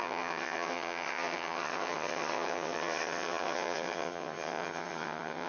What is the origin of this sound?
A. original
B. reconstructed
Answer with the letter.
B